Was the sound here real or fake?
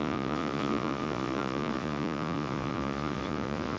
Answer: fake